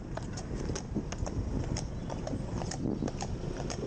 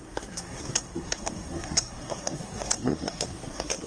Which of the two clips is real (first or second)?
first